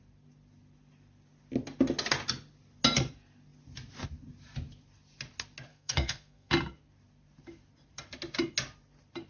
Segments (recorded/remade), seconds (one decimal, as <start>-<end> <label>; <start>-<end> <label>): 0.0-5.7 recorded; 5.7-6.5 remade; 6.5-9.3 recorded